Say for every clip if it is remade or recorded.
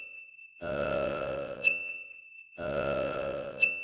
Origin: remade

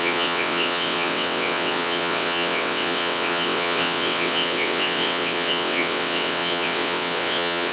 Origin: remade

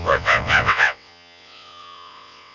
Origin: remade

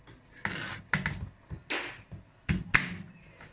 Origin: recorded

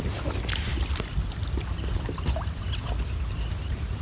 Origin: recorded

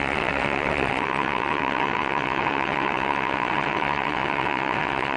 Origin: remade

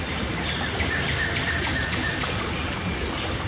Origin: recorded